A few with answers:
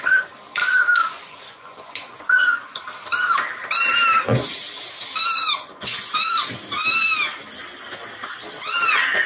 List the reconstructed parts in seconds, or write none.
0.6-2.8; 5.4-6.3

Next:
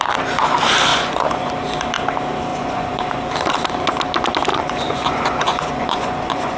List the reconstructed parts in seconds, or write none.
0.9-1.5; 2.5-3.2; 4.5-6.6

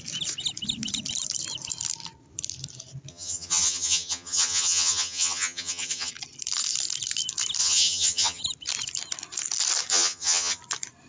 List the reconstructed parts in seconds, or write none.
3.1-6.1; 7.6-8.4; 9.9-10.6